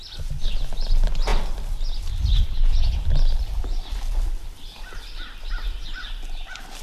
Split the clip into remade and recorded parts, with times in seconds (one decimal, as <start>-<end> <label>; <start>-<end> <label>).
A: 0.0-6.8 recorded